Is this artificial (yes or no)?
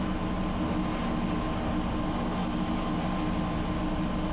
no